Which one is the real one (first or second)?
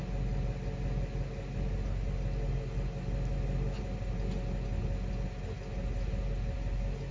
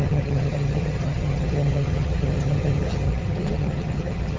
first